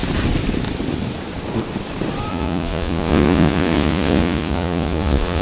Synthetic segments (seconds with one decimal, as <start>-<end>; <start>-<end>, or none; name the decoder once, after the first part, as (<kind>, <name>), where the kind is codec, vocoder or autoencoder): 2.3-5.4 (vocoder, Vocos)